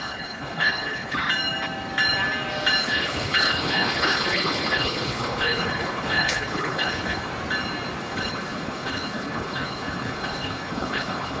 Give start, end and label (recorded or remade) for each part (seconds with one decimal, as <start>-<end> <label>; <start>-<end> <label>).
0.0-1.2 remade; 1.2-2.8 recorded; 2.8-7.3 remade; 7.3-8.0 recorded; 8.0-11.4 remade